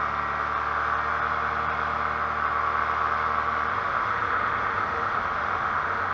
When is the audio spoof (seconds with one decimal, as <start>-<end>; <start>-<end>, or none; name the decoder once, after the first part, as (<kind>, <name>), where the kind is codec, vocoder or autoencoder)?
3.7-6.1 (autoencoder, DAC-VAE)